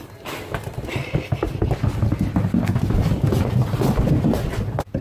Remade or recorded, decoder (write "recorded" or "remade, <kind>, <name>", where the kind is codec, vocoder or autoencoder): recorded